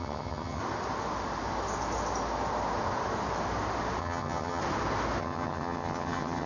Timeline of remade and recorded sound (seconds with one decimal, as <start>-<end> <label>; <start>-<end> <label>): 0.0-0.6 remade; 0.6-4.0 recorded; 4.0-4.6 remade; 4.6-5.2 recorded; 5.2-6.5 remade